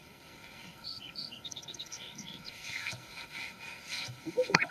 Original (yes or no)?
no